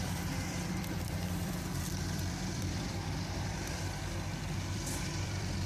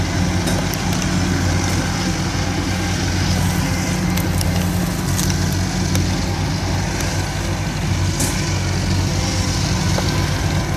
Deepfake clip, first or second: first